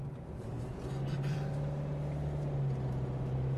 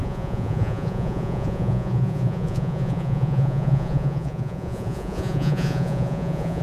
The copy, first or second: second